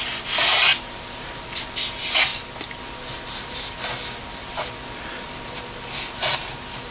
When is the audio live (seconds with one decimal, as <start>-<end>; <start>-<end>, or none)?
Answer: 0.0-0.5; 1.4-6.9